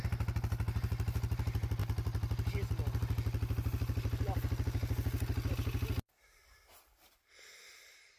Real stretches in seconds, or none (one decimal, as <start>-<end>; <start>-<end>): 0.0-8.2